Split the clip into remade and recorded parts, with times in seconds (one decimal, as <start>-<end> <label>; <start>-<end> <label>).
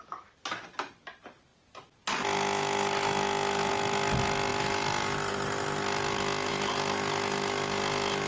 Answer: 0.0-8.3 recorded